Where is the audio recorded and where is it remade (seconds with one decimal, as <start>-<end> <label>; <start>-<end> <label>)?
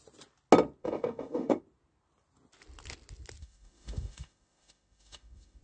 0.0-0.8 recorded; 0.8-1.6 remade; 1.6-3.4 recorded; 3.4-5.6 remade